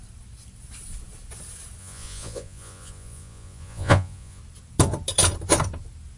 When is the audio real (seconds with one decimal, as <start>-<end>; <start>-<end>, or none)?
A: 0.0-1.8; 4.4-6.2

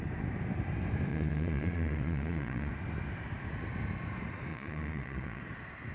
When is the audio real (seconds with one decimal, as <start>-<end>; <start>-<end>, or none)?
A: 0.0-1.1; 2.7-4.5; 5.4-5.9

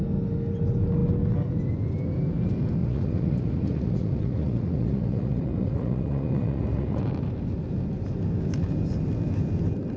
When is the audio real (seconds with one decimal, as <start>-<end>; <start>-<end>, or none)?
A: 0.0-2.8; 7.0-10.0

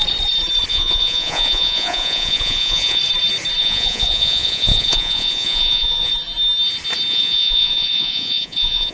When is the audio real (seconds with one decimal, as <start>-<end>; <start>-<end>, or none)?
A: 0.0-0.7; 3.0-3.6; 6.1-7.1

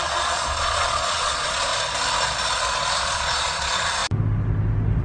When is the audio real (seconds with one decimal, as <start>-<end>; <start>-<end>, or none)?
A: 1.7-3.0; 4.0-5.0

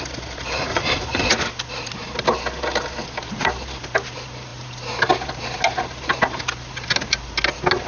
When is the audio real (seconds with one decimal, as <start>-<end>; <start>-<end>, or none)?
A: 0.0-0.7; 1.3-7.9

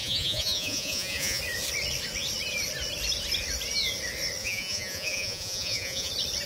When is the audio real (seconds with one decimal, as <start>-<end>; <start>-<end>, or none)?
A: 1.4-4.4; 6.1-6.5